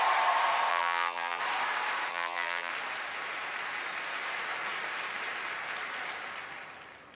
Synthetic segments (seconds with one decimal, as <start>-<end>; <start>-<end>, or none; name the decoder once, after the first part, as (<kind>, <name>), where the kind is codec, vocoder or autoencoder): 0.7-1.4 (vocoder, BigVGAN v2); 2.1-2.7